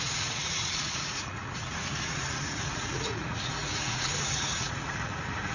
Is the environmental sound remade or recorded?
remade